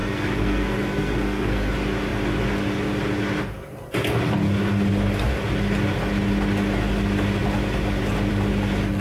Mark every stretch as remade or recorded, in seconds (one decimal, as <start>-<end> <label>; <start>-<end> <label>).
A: 0.0-1.7 remade; 1.7-9.0 recorded